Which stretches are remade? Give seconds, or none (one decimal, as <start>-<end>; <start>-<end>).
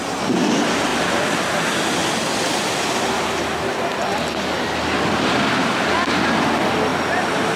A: 0.9-1.6; 2.0-4.0; 6.9-7.6